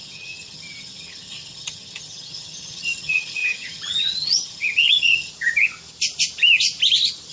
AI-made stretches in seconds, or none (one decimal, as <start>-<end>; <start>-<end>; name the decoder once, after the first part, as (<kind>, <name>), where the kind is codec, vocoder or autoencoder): 0.0-5.3 (vocoder, HiFi-GAN)